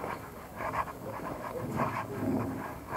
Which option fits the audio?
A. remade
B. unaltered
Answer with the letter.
A